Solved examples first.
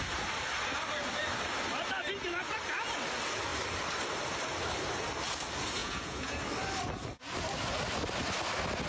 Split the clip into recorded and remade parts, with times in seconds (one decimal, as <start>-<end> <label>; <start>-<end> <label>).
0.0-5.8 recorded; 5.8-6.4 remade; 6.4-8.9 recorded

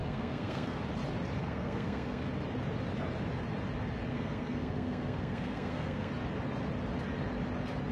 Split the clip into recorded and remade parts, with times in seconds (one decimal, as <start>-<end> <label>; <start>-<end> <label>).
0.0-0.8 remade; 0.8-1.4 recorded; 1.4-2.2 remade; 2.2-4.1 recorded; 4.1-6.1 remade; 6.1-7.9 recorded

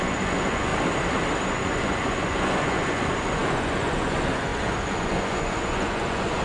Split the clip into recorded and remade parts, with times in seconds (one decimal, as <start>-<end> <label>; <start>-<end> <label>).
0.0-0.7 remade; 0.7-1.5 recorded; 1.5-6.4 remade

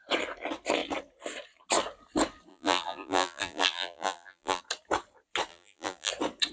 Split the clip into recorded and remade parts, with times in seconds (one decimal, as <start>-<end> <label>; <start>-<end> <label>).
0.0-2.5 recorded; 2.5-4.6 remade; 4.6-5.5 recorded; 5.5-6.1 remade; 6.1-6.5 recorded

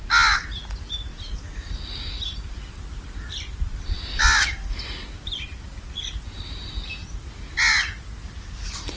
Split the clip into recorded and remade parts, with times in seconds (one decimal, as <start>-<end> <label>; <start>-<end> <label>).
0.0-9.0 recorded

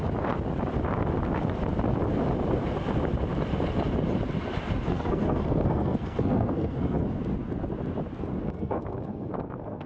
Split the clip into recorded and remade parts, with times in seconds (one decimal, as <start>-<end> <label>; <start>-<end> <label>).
0.0-4.9 recorded; 4.9-7.2 remade; 7.2-8.3 recorded; 8.3-9.9 remade

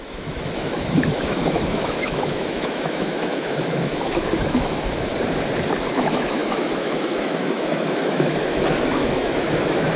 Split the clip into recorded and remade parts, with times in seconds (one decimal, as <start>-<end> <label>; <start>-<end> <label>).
0.0-5.1 remade; 5.1-5.9 recorded; 5.9-10.0 remade